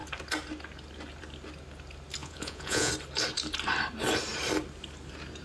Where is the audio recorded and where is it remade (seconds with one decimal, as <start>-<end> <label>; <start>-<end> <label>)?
0.0-2.2 recorded; 2.2-2.9 remade; 2.9-5.4 recorded